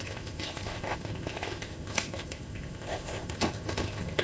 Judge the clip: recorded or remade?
remade